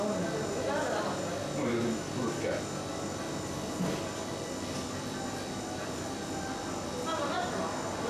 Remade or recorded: recorded